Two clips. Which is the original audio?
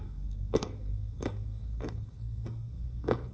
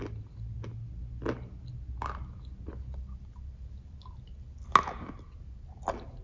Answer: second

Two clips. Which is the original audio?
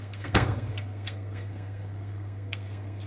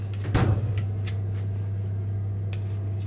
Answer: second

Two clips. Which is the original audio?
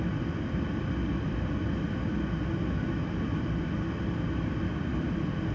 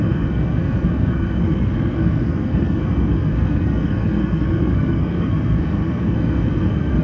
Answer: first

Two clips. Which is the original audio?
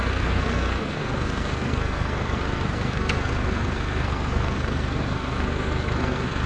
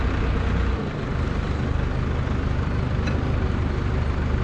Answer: second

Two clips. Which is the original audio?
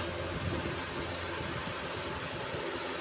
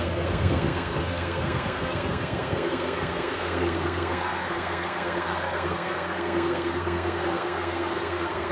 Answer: first